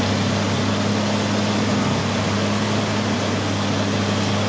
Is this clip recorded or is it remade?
recorded